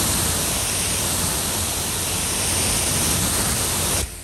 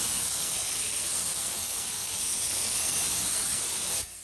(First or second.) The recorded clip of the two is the first